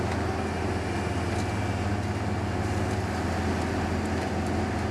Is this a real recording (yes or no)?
yes